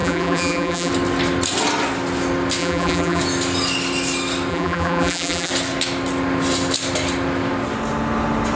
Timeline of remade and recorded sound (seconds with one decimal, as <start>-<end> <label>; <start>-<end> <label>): 0.0-0.9 remade; 0.9-2.6 recorded; 2.6-3.2 remade; 3.2-4.5 recorded; 4.5-5.5 remade; 5.5-8.6 recorded